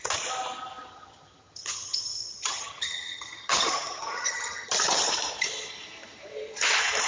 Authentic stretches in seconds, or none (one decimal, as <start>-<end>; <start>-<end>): 0.0-0.9; 5.1-7.1